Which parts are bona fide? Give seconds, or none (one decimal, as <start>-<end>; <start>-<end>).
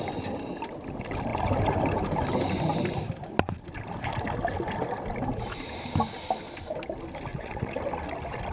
0.0-7.3; 7.8-8.5